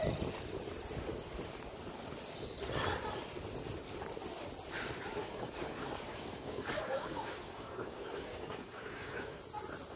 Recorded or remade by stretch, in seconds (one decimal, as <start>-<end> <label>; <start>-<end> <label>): 0.0-5.2 recorded; 5.2-9.4 remade; 9.4-10.0 recorded